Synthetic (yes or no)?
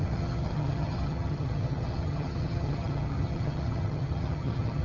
yes